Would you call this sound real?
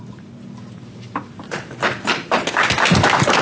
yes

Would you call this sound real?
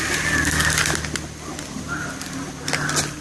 yes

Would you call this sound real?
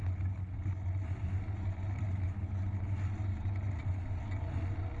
yes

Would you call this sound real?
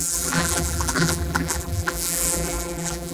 no